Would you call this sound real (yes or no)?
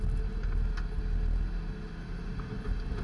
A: yes